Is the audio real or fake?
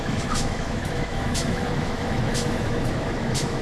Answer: fake